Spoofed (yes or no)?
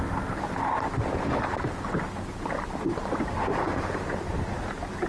no